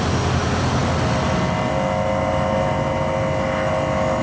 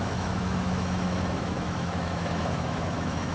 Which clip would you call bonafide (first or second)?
first